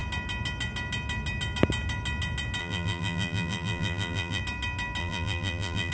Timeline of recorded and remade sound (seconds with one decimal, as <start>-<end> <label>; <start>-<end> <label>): 0.0-2.6 recorded; 2.6-4.4 remade; 4.4-5.0 recorded; 5.0-5.9 remade

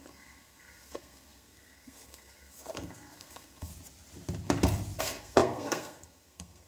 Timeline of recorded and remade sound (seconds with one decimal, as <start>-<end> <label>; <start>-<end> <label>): 0.0-3.7 remade; 3.7-5.0 recorded; 5.0-6.7 remade

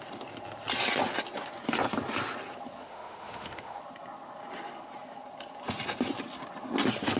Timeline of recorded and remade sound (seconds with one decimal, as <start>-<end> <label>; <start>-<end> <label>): 0.0-2.8 recorded; 2.8-3.8 remade; 3.8-7.2 recorded

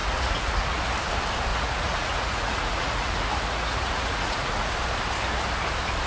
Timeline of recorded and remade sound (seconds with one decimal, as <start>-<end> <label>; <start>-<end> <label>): 0.0-0.8 remade; 0.8-1.5 recorded; 1.5-4.7 remade; 4.7-6.1 recorded

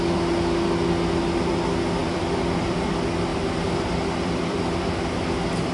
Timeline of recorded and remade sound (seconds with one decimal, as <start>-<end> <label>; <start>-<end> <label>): 0.0-2.0 recorded; 2.0-2.9 remade; 2.9-3.3 recorded; 3.3-4.8 remade; 4.8-5.7 recorded

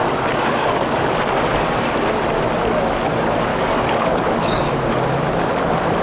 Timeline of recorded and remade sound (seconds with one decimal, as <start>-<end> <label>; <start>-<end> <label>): 0.0-1.0 remade; 1.0-3.5 recorded; 3.5-4.8 remade; 4.8-6.0 recorded